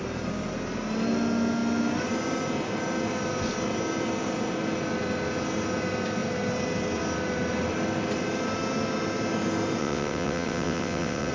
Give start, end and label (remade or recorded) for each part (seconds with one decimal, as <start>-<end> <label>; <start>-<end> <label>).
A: 0.0-9.8 recorded; 9.8-11.3 remade